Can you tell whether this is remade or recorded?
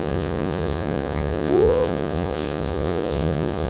remade